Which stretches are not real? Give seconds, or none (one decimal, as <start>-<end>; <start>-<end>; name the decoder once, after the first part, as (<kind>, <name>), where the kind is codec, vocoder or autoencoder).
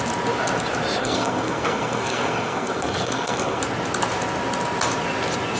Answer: 1.0-3.6 (codec, SNAC)